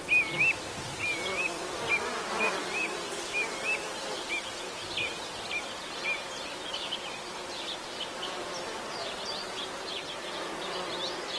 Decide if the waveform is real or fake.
real